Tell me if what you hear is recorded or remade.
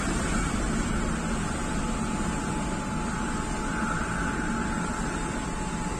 recorded